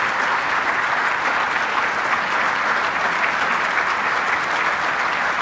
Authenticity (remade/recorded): recorded